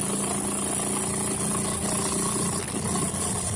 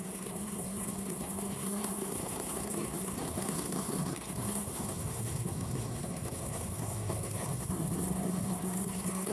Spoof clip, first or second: second